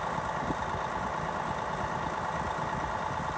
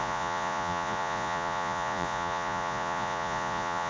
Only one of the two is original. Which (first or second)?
first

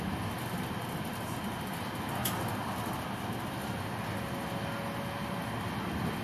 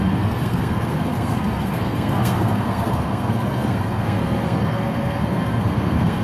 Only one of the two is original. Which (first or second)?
first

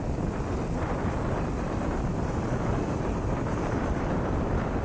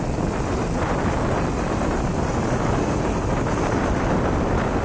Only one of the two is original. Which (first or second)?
second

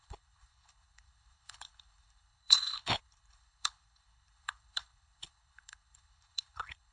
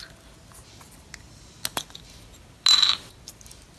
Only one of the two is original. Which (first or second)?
second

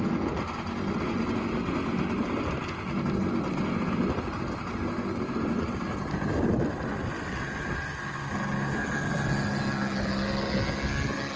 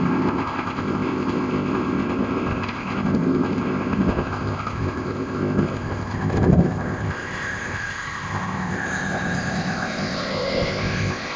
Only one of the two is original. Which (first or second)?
first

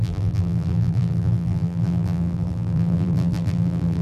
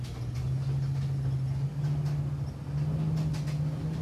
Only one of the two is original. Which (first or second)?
second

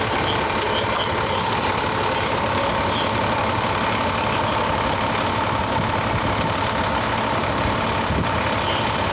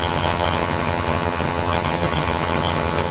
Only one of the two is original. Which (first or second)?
first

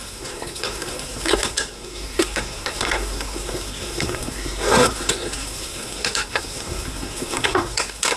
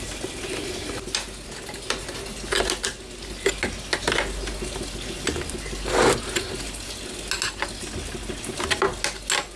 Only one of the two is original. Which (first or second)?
second